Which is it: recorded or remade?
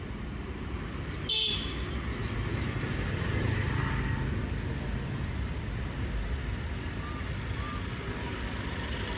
recorded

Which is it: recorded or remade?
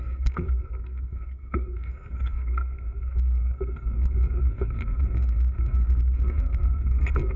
remade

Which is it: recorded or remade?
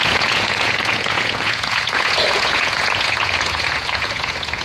remade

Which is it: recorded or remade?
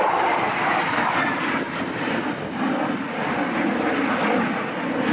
recorded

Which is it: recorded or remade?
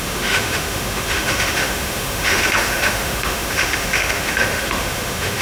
remade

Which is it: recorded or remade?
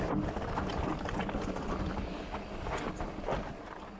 recorded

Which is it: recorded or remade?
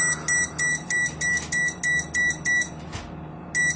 recorded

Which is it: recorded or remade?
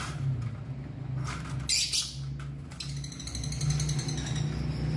recorded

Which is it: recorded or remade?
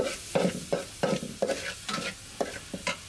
recorded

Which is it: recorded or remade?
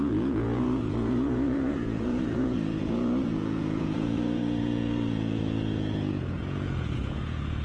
remade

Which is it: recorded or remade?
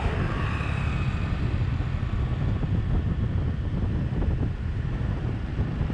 recorded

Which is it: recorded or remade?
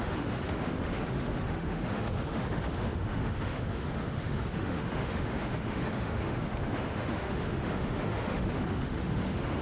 remade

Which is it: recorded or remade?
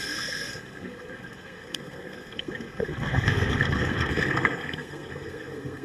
remade